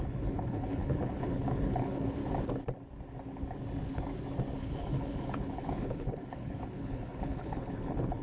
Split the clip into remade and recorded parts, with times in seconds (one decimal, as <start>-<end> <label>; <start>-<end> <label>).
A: 0.0-2.2 remade; 2.2-4.6 recorded; 4.6-8.2 remade